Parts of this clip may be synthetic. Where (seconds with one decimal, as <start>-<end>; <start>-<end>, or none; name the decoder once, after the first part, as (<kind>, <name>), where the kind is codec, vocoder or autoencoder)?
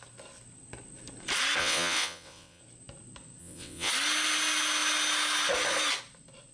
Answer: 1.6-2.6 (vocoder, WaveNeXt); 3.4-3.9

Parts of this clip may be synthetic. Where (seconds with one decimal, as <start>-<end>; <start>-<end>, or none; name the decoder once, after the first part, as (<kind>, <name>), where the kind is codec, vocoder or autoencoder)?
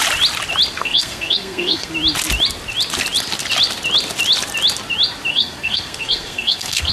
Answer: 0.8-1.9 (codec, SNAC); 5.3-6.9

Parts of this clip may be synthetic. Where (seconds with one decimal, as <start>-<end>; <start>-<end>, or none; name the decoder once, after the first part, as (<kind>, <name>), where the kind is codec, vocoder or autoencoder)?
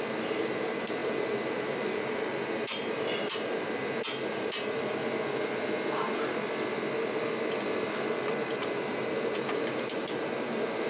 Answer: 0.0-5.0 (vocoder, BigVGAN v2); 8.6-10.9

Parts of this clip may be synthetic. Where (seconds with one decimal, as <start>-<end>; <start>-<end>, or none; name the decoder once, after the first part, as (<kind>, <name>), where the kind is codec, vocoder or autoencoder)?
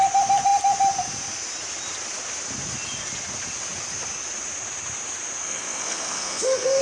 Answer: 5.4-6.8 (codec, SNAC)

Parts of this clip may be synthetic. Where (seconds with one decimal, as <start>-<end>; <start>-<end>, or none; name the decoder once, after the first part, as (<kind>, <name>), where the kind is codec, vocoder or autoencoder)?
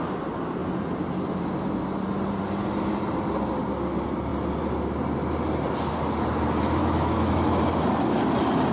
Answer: 6.8-7.6 (autoencoder, DAC-VAE)